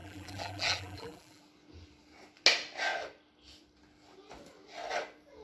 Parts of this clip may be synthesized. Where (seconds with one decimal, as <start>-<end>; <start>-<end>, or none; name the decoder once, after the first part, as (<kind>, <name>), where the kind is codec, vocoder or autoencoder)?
0.0-1.4 (vocoder, BigVGAN v2)

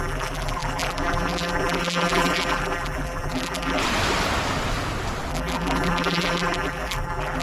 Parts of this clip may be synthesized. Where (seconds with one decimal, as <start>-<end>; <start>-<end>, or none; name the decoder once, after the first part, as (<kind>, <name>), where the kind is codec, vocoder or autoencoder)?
0.0-3.8 (vocoder, BigVGAN v2); 5.3-7.4

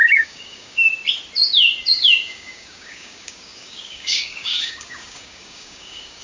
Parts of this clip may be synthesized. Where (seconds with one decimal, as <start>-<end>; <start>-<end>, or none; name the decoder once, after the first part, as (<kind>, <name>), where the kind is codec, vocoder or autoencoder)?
0.0-0.9 (codec, DAC); 1.9-6.2

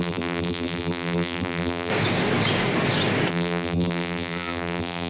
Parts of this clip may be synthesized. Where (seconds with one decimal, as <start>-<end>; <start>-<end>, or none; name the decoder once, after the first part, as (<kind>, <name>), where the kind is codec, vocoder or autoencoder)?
0.0-1.9 (vocoder, BigVGAN v2); 3.3-5.1

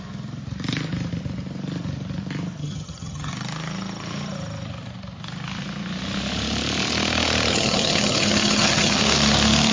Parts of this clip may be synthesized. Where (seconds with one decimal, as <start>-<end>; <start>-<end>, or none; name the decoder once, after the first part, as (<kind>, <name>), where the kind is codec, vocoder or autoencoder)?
2.6-3.3 (vocoder, HiFi-GAN); 7.5-9.0